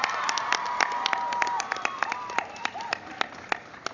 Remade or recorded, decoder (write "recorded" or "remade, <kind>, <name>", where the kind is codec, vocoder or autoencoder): recorded